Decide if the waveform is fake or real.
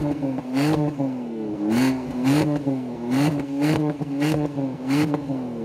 fake